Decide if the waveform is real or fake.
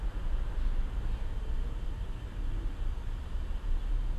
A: real